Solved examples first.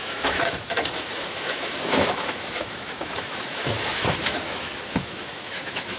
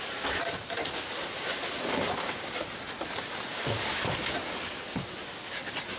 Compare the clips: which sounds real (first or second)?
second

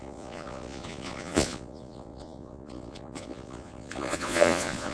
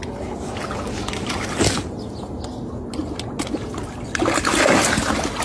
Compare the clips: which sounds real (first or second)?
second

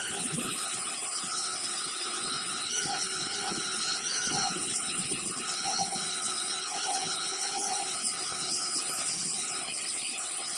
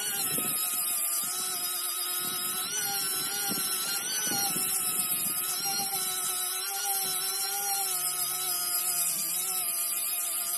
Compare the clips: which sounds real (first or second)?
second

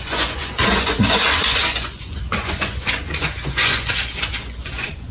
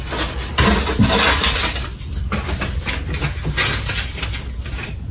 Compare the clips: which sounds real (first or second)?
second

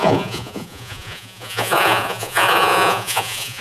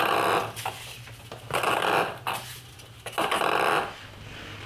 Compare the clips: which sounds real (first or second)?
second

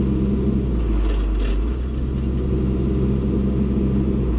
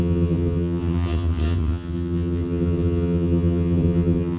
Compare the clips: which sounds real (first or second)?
first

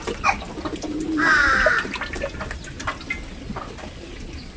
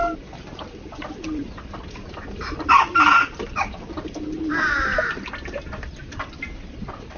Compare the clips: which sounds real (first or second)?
first